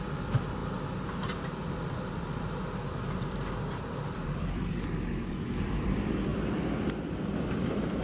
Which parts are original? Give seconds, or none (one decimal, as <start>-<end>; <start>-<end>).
none